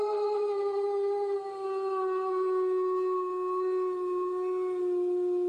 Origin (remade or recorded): recorded